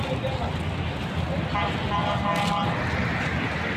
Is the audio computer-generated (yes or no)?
no